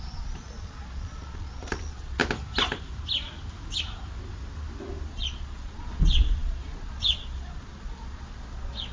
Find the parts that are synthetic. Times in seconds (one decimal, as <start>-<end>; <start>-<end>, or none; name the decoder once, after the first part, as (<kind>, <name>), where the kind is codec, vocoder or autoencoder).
0.0-2.2 (vocoder, Vocos); 5.1-8.9